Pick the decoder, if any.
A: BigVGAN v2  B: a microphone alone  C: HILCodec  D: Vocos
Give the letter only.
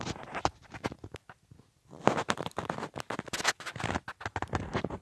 B